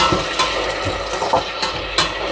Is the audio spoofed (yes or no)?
no